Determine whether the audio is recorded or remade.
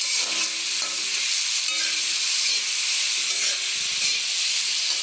recorded